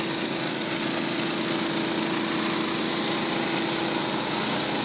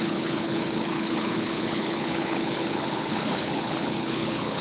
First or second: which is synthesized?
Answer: second